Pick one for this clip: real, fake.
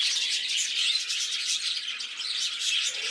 real